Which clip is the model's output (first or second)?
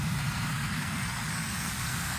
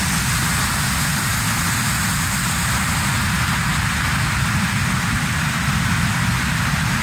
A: first